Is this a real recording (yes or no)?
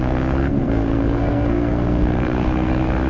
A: no